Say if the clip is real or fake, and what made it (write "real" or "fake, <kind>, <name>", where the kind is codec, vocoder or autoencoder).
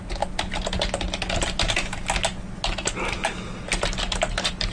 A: real